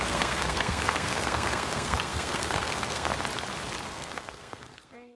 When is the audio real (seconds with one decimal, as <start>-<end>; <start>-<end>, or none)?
3.1-3.9

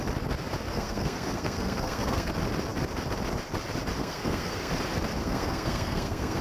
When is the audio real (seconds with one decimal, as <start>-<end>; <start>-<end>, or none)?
0.0-0.7; 2.3-4.0; 4.7-5.2

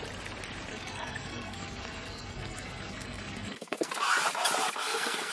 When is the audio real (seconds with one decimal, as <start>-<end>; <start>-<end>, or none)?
0.0-0.7; 3.9-4.8

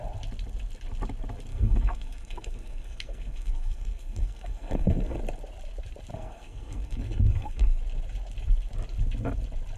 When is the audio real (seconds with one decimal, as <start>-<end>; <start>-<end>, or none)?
0.0-1.5; 5.2-6.1; 7.8-9.8

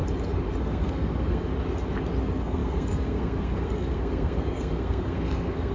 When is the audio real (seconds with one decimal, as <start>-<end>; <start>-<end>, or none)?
0.0-0.6; 1.5-2.2

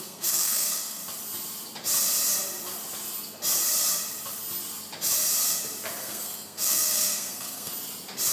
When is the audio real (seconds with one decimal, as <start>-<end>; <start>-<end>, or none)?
1.0-6.0; 7.7-8.3

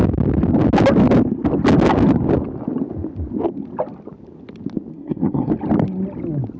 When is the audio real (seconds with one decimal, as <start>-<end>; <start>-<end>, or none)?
0.0-4.9; 5.5-6.6